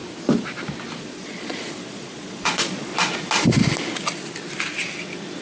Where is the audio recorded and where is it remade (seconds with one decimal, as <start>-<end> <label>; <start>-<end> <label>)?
0.0-1.0 recorded; 1.0-2.9 remade; 2.9-5.4 recorded